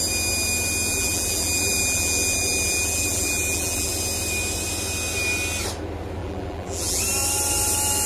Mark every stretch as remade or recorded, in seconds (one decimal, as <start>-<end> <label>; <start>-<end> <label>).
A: 0.0-0.9 recorded; 0.9-3.9 remade; 3.9-6.2 recorded; 6.2-7.0 remade; 7.0-8.1 recorded